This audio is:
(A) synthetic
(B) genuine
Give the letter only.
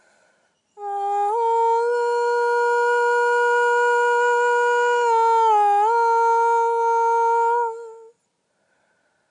B